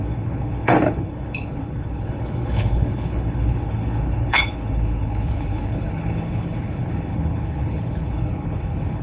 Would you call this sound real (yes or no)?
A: no